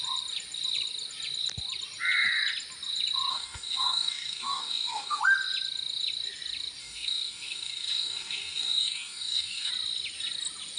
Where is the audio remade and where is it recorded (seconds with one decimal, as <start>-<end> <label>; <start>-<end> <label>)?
0.0-3.3 recorded; 3.3-5.2 remade; 5.2-6.8 recorded; 6.8-9.7 remade; 9.7-10.8 recorded